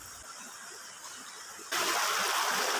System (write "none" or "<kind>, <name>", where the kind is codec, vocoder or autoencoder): none